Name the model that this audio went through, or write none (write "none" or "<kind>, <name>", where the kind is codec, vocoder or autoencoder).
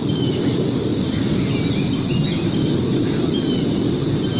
none